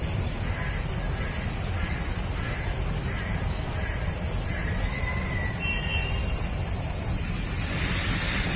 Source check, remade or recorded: recorded